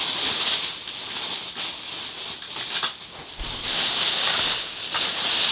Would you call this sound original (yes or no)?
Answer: yes